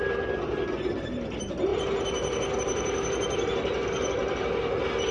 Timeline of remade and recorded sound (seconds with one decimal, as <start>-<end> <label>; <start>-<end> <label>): 0.0-5.1 recorded